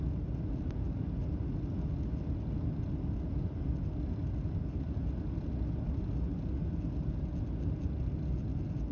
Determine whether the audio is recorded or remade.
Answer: recorded